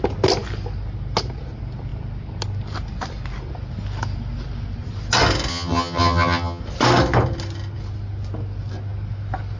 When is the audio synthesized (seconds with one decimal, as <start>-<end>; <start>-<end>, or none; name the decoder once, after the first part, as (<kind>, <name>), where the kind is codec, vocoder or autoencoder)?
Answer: 5.5-6.6 (vocoder, HiFi-GAN)